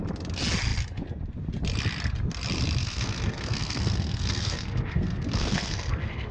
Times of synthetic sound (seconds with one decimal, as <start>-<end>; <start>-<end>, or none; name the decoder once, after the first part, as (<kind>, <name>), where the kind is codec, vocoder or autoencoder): 2.8-6.3 (codec, SNAC)